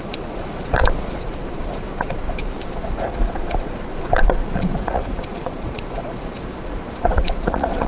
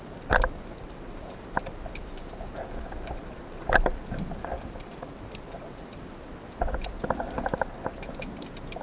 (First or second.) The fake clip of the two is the first